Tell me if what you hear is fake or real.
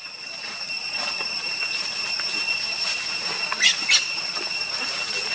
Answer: real